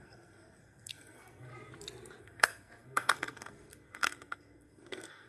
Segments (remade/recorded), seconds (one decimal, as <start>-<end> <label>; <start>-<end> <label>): 0.0-1.5 remade; 1.5-2.2 recorded; 2.2-5.3 remade